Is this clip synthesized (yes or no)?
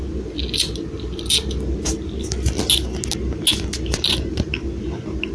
no